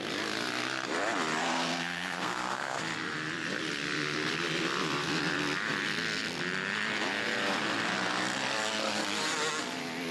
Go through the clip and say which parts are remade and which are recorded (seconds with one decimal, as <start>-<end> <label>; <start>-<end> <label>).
0.0-1.4 recorded; 1.4-2.8 remade; 2.8-10.1 recorded